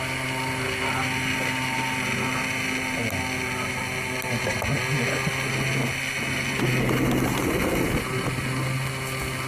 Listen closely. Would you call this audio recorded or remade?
recorded